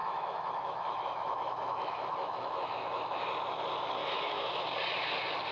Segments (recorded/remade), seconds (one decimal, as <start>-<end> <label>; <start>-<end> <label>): 0.0-3.2 remade; 3.2-4.0 recorded; 4.0-4.7 remade; 4.7-5.5 recorded